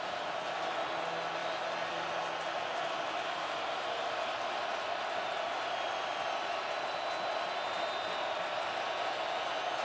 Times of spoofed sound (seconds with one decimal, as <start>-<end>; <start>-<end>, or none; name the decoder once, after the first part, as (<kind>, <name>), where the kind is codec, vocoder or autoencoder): none